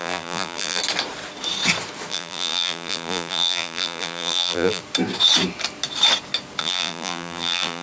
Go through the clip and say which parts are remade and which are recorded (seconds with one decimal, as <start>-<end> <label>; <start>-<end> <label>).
0.0-0.8 remade; 0.8-2.1 recorded; 2.1-4.8 remade; 4.8-6.6 recorded; 6.6-7.8 remade